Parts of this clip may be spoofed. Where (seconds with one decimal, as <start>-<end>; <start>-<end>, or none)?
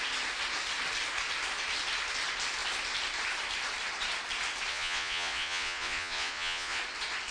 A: 4.7-6.8